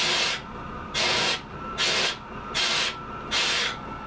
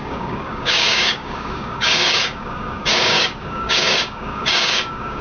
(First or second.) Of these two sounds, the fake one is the second